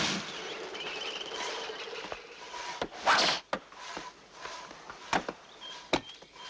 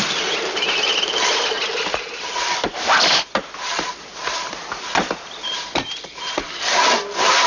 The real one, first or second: first